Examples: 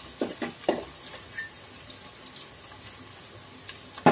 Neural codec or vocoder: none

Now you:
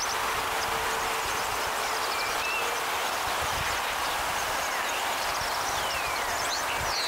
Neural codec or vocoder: none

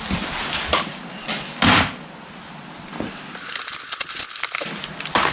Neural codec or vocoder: none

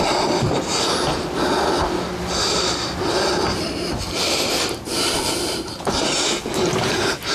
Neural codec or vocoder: none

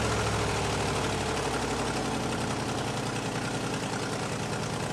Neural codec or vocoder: none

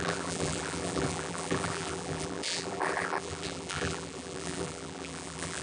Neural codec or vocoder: vocoder, BigVGAN v2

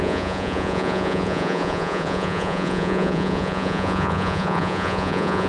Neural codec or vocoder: vocoder, Vocos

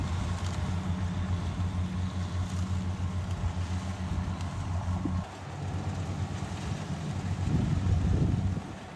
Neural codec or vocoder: none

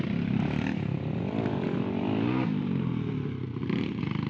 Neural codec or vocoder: none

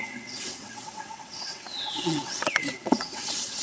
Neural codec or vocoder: vocoder, WaveNeXt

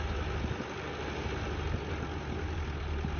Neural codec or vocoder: none